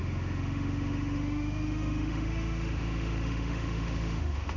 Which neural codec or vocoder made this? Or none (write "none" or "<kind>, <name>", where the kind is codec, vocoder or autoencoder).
autoencoder, DAC-VAE